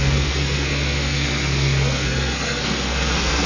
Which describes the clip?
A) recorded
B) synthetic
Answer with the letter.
B